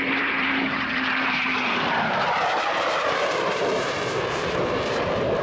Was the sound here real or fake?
fake